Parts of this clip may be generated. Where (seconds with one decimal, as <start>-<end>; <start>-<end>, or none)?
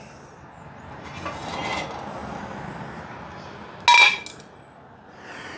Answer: none